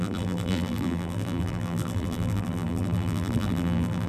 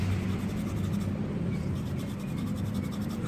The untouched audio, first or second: second